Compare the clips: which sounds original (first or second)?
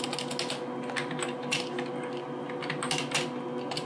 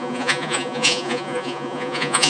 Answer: first